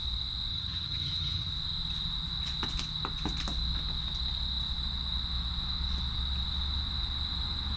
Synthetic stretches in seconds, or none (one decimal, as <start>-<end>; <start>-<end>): 0.5-1.5